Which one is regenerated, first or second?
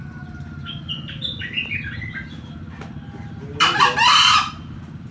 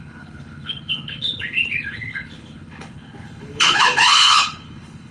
second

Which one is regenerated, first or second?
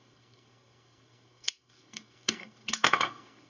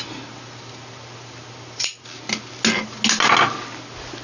first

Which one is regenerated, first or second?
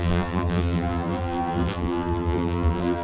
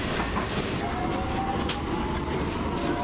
first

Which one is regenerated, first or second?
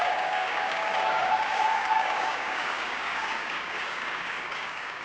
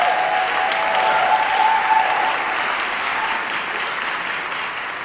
first